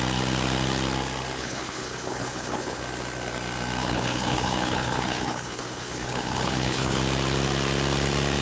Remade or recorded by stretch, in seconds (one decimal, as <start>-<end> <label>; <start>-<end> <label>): 0.0-1.4 recorded; 1.4-2.8 remade; 2.8-3.8 recorded; 3.8-7.0 remade; 7.0-8.4 recorded